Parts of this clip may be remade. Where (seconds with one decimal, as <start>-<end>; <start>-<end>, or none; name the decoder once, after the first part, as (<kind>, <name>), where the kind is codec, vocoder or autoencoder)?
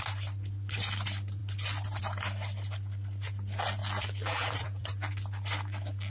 3.8-5.1 (vocoder, BigVGAN v2)